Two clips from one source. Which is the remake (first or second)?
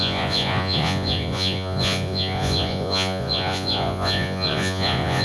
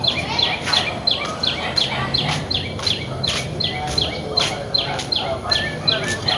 first